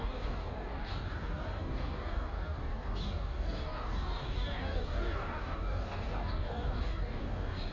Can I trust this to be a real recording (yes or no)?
no